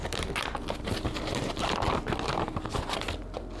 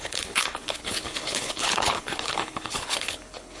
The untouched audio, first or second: first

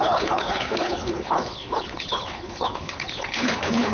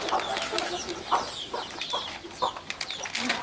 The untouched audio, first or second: second